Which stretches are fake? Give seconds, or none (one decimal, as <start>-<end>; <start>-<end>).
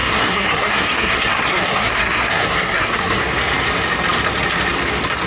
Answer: 0.0-3.2